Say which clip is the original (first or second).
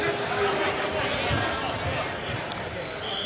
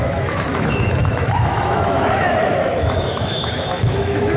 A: first